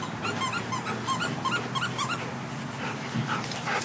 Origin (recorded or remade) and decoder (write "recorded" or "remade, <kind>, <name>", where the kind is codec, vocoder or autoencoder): recorded